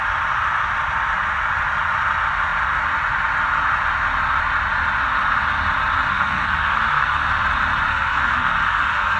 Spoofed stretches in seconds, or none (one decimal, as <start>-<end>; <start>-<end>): 6.1-7.4; 7.9-9.2